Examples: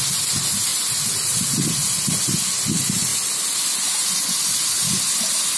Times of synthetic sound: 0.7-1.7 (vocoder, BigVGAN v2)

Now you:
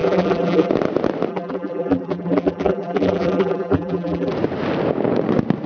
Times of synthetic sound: 0.0-0.7 (vocoder, BigVGAN v2); 1.3-4.3